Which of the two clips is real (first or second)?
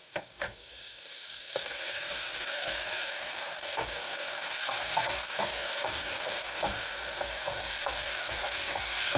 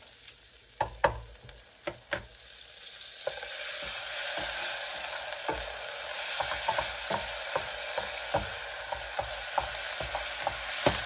second